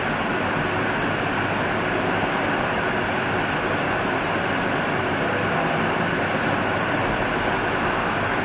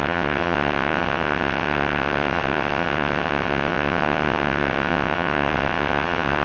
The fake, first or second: second